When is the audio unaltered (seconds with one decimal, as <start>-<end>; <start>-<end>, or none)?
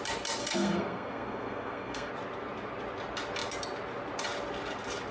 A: 0.0-0.4; 2.1-5.1